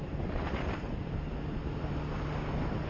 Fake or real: real